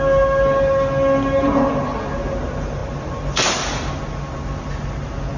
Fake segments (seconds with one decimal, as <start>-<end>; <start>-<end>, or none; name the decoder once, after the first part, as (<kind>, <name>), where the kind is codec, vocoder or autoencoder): none